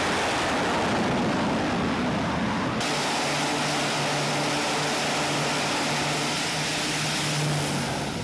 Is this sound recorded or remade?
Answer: recorded